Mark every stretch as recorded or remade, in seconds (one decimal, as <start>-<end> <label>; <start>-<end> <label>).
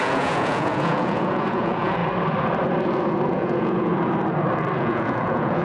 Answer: 0.0-2.0 remade; 2.0-3.3 recorded; 3.3-3.9 remade; 3.9-4.8 recorded; 4.8-5.6 remade